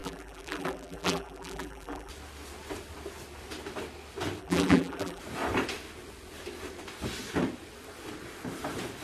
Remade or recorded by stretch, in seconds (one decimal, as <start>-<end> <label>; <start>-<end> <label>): 0.0-2.1 remade; 2.1-4.4 recorded; 4.4-5.2 remade; 5.2-9.0 recorded